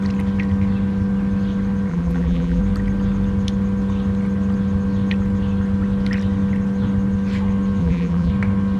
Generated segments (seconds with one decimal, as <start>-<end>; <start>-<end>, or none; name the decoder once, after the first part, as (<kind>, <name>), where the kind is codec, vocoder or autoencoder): 1.9-2.6 (vocoder, BigVGAN v2); 7.8-8.3